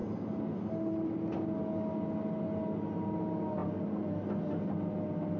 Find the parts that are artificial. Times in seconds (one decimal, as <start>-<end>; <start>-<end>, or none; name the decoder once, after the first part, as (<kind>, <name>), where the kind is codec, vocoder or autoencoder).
none